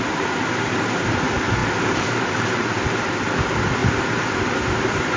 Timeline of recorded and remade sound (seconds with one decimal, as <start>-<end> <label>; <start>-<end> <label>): 0.0-5.2 remade